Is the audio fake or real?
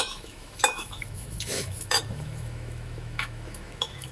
fake